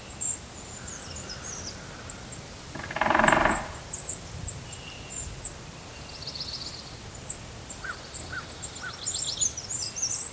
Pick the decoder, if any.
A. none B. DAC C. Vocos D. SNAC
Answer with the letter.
A